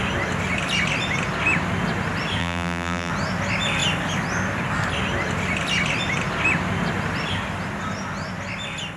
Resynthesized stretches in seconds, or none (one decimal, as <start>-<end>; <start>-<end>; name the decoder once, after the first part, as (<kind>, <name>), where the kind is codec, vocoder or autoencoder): 2.4-3.1 (vocoder, BigVGAN v2)